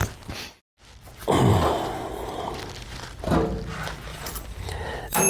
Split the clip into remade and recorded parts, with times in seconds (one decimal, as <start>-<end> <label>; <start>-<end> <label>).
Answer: 0.0-1.5 recorded; 1.5-2.4 remade; 2.4-4.1 recorded; 4.1-5.3 remade